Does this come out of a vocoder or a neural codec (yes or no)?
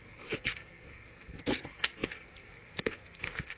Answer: yes